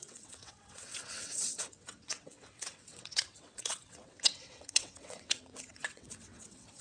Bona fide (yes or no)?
no